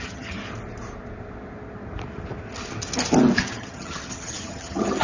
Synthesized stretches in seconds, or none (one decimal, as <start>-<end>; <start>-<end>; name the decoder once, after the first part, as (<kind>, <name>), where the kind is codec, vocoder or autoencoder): 0.0-0.4 (vocoder, HiFi-GAN); 3.4-5.0